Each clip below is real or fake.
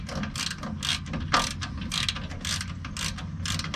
real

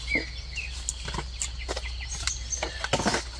real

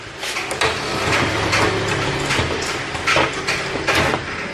real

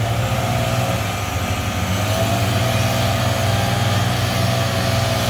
real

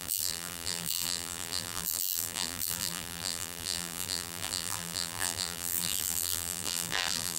fake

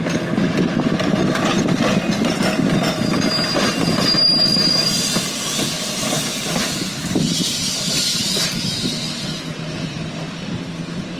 real